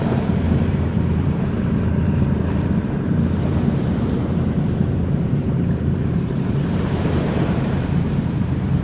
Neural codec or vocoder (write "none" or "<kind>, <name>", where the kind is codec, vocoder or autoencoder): vocoder, BigVGAN v2